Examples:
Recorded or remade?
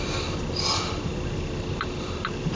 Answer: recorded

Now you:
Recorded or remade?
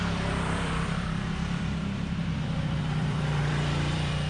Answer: remade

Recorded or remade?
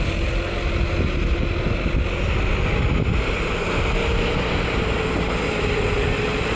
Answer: recorded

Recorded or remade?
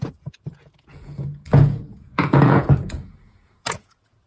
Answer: remade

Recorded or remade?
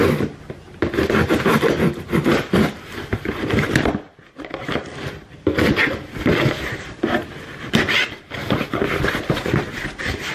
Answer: recorded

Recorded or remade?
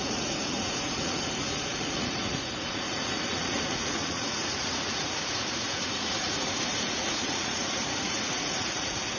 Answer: remade